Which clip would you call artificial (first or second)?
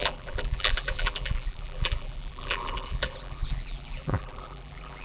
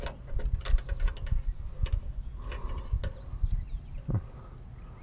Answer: first